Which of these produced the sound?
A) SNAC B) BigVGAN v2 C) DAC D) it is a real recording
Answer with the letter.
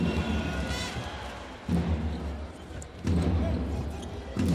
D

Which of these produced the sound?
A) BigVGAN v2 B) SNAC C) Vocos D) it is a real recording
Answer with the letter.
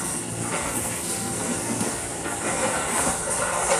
B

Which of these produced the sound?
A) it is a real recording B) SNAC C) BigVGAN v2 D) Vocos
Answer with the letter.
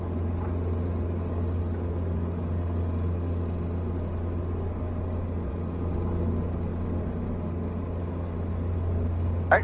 A